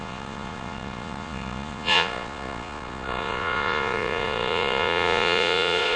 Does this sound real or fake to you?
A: fake